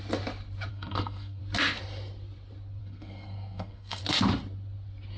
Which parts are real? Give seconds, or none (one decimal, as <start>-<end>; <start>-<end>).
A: 0.0-0.7; 1.4-2.8; 4.0-5.2